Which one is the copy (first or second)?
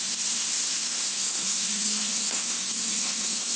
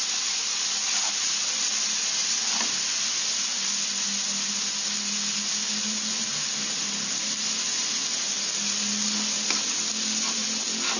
first